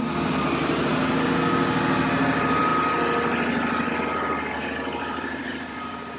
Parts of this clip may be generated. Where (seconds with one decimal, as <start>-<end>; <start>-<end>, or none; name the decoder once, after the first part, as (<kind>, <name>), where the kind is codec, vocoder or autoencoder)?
0.0-0.9 (vocoder, BigVGAN v2); 2.2-2.7; 3.9-6.2